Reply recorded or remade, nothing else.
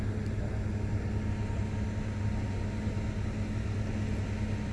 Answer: recorded